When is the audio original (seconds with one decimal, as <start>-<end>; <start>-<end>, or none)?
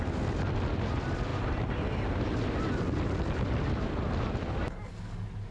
0.0-5.5